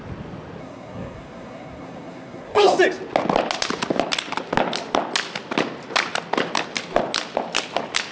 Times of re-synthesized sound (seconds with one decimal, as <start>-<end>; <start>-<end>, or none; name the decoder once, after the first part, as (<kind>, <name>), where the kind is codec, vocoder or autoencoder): 0.6-2.8 (codec, SNAC)